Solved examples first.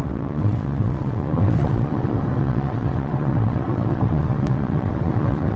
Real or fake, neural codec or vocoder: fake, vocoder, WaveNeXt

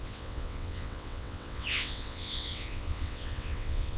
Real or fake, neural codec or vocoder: fake, vocoder, WaveNeXt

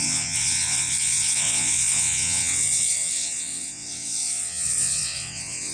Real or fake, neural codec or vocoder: fake, vocoder, WaveNeXt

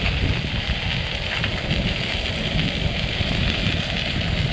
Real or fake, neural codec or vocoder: real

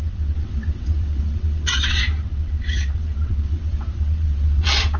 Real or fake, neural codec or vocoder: fake, vocoder, WaveNeXt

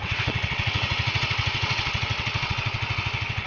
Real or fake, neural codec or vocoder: fake, vocoder, WaveNeXt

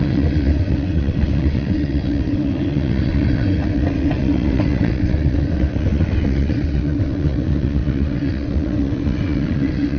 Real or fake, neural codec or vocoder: fake, vocoder, WaveNeXt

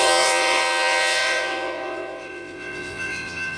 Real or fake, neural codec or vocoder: fake, vocoder, WaveNeXt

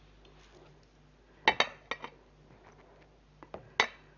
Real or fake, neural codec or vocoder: real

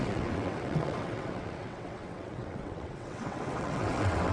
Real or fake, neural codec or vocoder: fake, vocoder, WaveNeXt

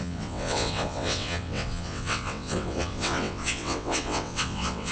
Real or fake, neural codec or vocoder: fake, vocoder, WaveNeXt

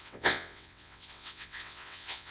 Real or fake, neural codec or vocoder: fake, vocoder, WaveNeXt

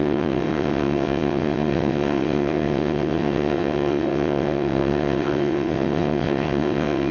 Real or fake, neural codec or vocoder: fake, vocoder, WaveNeXt